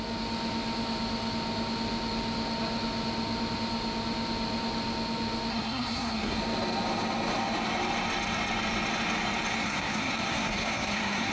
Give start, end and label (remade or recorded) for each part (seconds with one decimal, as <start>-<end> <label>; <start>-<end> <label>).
0.0-5.5 recorded; 5.5-6.4 remade; 6.4-9.6 recorded; 9.6-11.3 remade